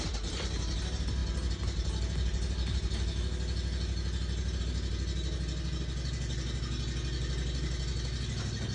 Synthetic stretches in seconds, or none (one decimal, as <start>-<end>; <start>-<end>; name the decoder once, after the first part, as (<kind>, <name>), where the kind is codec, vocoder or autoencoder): none